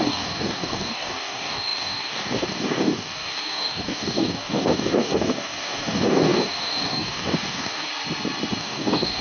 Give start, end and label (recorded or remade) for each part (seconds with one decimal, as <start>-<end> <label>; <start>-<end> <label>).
0.0-7.9 remade; 7.9-8.6 recorded; 8.6-9.2 remade